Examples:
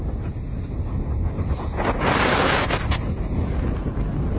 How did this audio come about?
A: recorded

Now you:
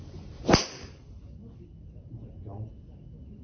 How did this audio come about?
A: recorded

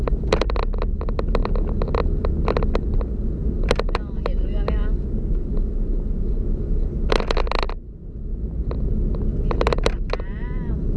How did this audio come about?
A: recorded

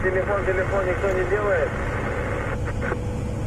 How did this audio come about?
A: recorded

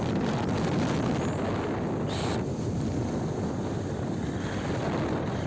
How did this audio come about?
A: recorded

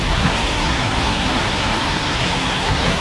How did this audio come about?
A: remade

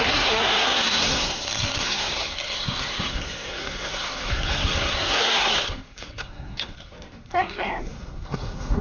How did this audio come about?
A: remade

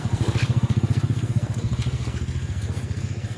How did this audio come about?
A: remade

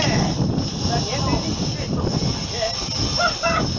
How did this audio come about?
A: recorded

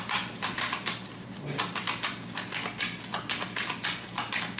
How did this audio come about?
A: recorded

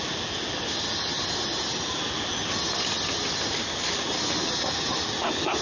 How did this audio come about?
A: recorded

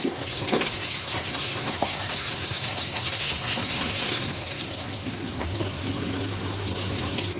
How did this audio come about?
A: remade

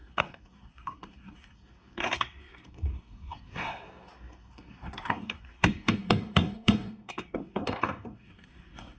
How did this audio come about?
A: remade